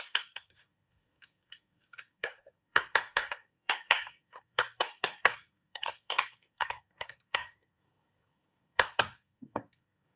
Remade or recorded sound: remade